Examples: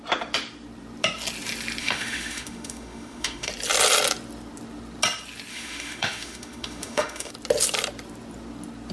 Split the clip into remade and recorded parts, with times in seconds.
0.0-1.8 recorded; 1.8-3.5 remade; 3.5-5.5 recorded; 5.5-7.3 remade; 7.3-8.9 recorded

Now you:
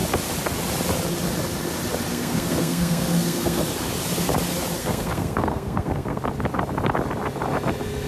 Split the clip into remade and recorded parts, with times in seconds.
0.0-2.1 recorded; 2.1-3.6 remade; 3.6-4.8 recorded; 4.8-6.2 remade; 6.2-8.1 recorded

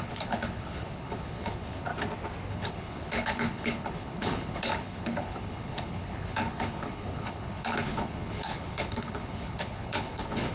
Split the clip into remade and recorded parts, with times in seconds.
0.0-1.9 remade; 1.9-2.5 recorded; 2.5-10.5 remade

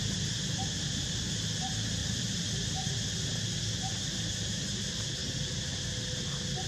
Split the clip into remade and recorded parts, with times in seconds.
0.0-2.0 recorded; 2.0-3.0 remade; 3.0-5.2 recorded; 5.2-5.8 remade; 5.8-6.7 recorded

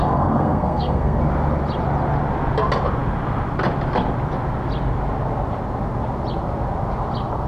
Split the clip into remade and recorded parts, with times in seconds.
0.0-1.2 remade; 1.2-7.5 recorded

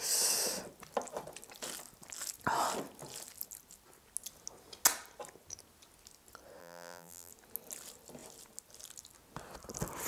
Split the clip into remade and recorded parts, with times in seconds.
0.0-6.6 recorded; 6.6-7.3 remade; 7.3-10.1 recorded

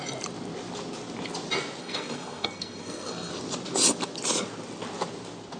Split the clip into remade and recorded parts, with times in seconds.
0.0-1.8 recorded; 1.8-3.3 remade; 3.3-5.6 recorded